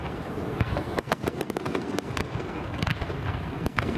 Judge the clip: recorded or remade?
remade